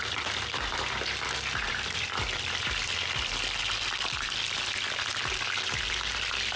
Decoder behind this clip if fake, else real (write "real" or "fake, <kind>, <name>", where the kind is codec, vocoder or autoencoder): real